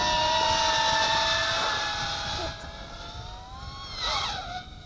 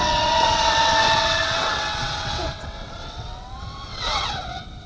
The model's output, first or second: second